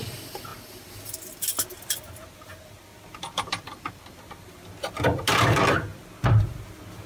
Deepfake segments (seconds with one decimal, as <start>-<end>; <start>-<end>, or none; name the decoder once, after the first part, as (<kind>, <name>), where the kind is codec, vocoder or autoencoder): none